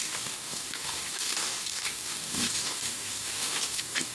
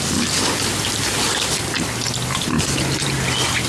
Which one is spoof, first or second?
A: first